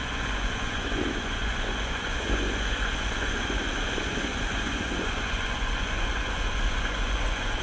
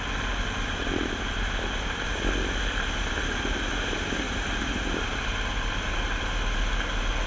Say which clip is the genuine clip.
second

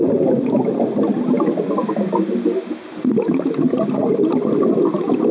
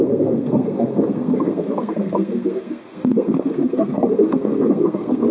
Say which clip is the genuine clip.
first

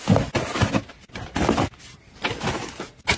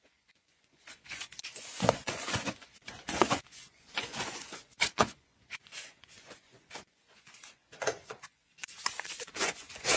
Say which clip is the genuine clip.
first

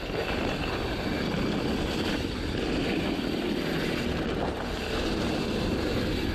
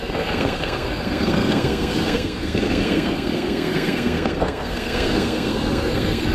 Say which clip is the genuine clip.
first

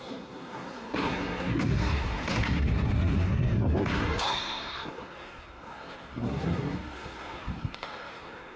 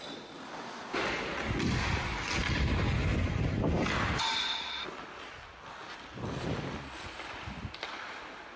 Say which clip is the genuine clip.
second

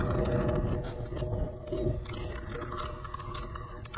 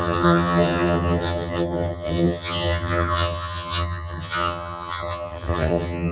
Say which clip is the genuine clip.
first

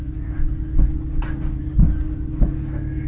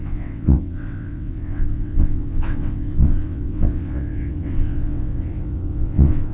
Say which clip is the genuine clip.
first